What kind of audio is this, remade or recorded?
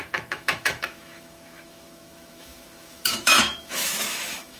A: remade